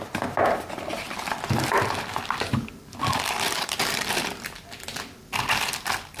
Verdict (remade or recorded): recorded